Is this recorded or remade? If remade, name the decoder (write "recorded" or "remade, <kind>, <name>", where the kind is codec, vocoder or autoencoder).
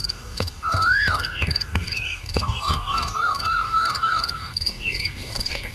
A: remade, codec, DAC